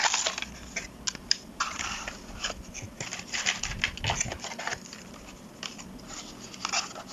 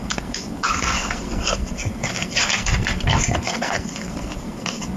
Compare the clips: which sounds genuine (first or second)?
first